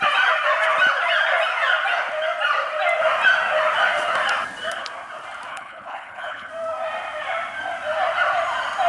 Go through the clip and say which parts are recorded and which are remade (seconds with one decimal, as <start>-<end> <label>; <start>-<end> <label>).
0.0-5.5 recorded; 5.5-6.5 remade; 6.5-8.9 recorded